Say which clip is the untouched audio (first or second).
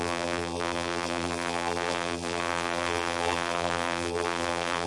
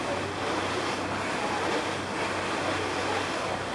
second